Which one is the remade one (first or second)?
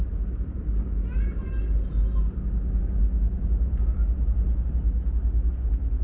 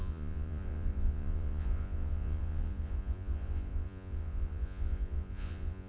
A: second